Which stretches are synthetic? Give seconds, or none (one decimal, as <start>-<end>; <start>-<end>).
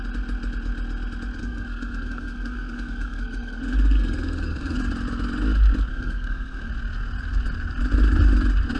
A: 1.4-4.8; 5.9-6.7